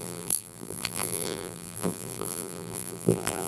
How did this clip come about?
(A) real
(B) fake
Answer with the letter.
B